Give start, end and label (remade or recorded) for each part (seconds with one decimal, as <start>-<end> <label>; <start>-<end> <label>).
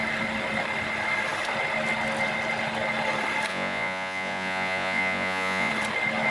0.0-3.5 recorded; 3.5-5.7 remade; 5.7-6.3 recorded